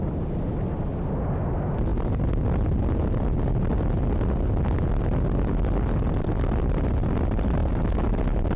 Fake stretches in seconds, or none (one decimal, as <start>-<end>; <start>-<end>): none